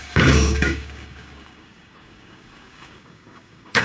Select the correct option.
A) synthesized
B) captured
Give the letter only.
A